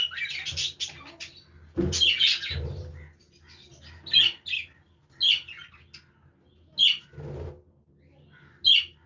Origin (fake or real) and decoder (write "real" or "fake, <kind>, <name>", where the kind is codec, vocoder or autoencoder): real